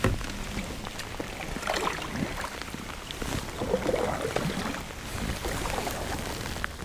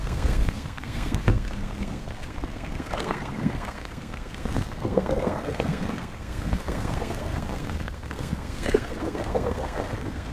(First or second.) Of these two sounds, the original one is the first